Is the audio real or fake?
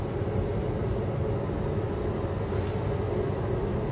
real